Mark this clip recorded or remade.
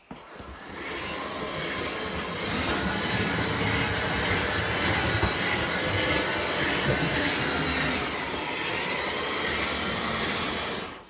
recorded